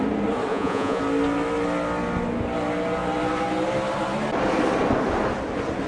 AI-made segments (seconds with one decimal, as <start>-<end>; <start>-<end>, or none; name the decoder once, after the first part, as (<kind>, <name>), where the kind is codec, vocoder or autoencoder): 0.5-1.0 (vocoder, Vocos)

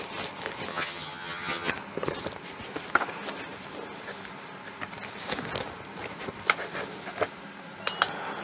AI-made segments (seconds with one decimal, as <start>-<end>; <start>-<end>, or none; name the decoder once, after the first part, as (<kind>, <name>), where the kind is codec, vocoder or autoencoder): 0.7-1.7 (vocoder, HiFi-GAN)

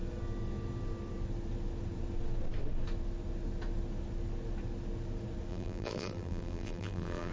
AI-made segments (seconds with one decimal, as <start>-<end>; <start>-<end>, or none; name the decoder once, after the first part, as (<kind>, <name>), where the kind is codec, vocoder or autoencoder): 5.5-7.3 (vocoder, BigVGAN v2)

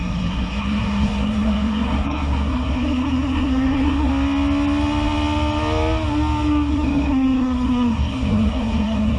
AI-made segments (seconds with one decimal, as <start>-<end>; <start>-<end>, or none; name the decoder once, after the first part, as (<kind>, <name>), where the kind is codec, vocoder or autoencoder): 0.0-4.1 (codec, SNAC); 6.7-9.2